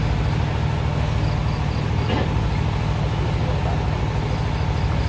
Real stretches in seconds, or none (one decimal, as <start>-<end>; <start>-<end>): 0.0-5.1